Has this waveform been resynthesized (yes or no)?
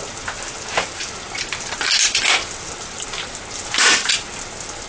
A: no